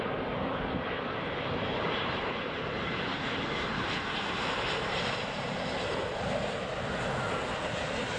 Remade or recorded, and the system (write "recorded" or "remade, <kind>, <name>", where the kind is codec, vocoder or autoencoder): remade, vocoder, BigVGAN v2